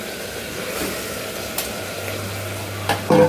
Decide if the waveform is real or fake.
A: real